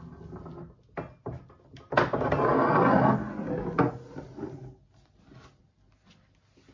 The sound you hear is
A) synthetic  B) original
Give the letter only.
B